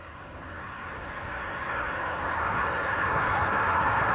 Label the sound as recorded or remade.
remade